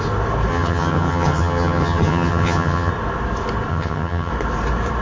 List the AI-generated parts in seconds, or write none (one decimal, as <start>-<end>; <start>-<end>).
0.5-2.9; 3.7-4.3